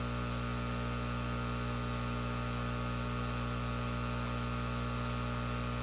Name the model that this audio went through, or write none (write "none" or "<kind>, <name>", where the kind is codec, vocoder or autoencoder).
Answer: none